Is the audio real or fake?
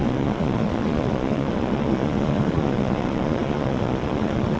fake